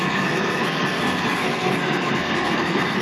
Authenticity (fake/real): fake